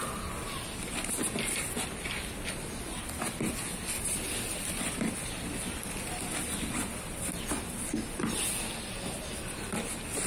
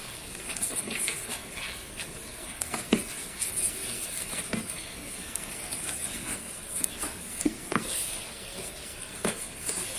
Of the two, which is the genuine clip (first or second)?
first